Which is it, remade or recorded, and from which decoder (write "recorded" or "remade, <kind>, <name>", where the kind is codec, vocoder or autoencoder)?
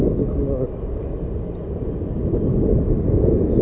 recorded